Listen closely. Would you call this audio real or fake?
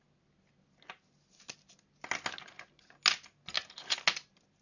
real